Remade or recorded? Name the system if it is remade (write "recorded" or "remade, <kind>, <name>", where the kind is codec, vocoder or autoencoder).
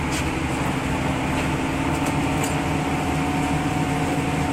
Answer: recorded